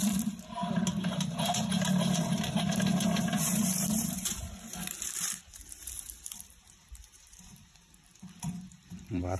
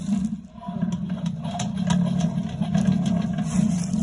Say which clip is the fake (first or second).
first